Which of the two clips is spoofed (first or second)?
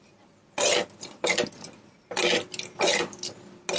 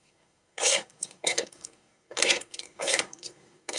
second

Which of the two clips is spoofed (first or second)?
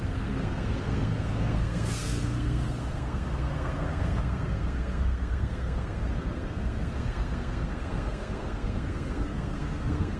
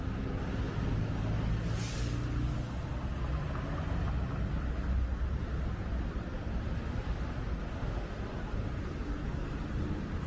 first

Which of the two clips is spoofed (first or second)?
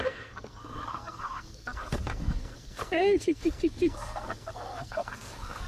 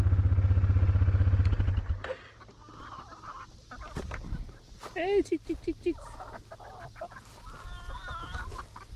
first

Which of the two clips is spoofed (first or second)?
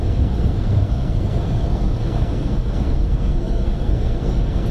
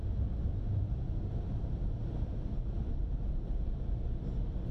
first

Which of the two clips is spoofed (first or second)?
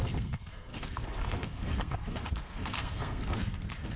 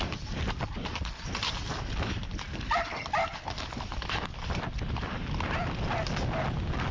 first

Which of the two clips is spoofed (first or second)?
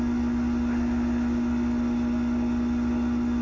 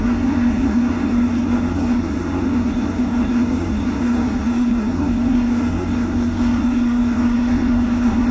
second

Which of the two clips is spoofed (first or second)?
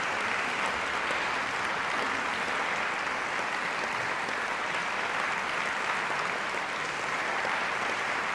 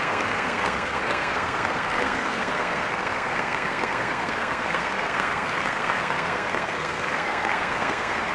second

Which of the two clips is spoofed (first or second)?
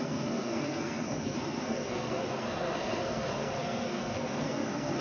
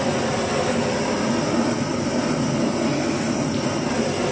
first